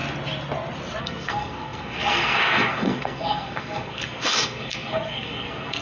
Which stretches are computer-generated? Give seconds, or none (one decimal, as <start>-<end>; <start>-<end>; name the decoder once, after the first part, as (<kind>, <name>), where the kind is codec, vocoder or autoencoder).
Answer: 1.0-5.8 (codec, SNAC)